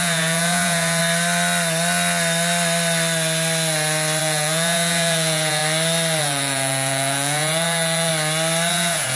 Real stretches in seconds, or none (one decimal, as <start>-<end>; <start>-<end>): 1.0-4.2; 5.6-6.2; 8.1-8.7